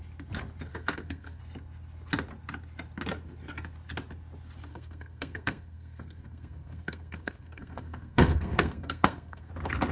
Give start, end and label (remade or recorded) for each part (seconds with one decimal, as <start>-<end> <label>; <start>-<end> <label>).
0.0-0.7 recorded; 0.7-1.4 remade; 1.4-4.7 recorded; 4.7-9.5 remade; 9.5-9.9 recorded